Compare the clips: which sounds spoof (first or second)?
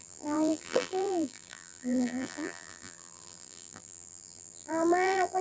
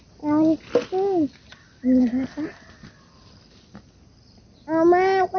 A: first